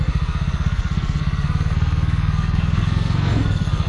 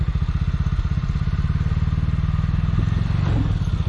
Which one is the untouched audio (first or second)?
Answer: second